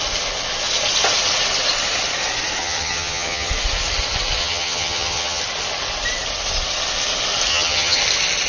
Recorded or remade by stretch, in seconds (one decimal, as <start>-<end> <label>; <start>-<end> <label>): 0.0-2.6 recorded; 2.6-3.5 remade; 3.5-4.4 recorded; 4.4-5.4 remade; 5.4-7.5 recorded; 7.5-8.0 remade; 8.0-8.5 recorded